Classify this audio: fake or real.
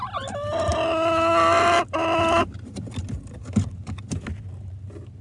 real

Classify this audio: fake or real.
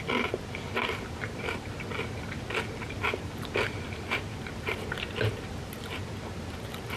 real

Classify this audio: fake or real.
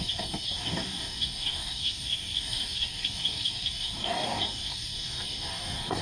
fake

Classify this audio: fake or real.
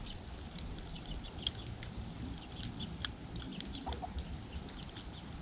real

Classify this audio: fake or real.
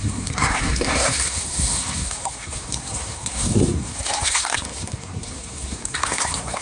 fake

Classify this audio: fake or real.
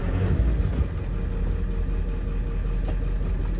real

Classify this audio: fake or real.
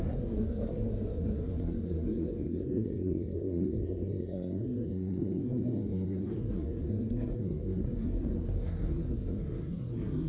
fake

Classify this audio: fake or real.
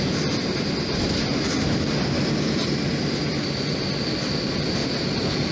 real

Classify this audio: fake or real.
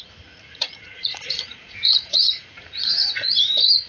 fake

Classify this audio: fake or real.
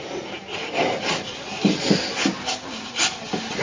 real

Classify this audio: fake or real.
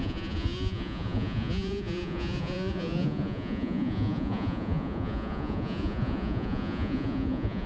fake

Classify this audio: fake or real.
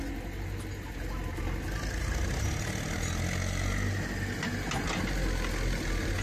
real